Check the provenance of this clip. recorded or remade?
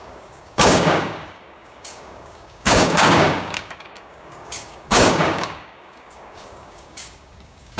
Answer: remade